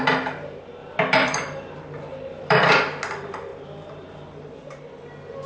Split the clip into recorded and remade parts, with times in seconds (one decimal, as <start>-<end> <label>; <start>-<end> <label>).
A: 0.0-0.8 recorded; 0.8-2.7 remade; 2.7-3.5 recorded; 3.5-4.6 remade; 4.6-5.5 recorded